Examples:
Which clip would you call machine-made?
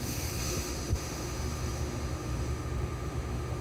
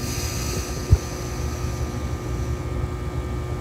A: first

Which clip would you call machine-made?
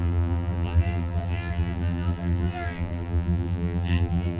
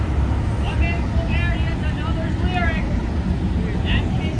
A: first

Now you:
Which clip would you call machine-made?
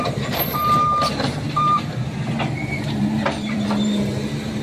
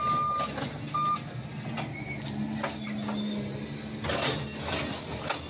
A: first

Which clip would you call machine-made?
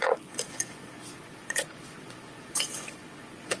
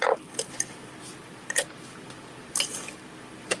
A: first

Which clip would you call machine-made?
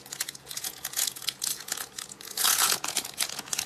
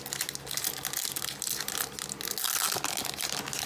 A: first